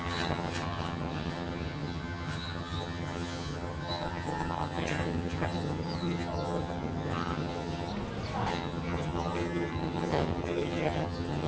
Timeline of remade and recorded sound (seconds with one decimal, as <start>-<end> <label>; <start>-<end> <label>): 0.0-7.9 remade; 7.9-8.5 recorded; 8.5-11.5 remade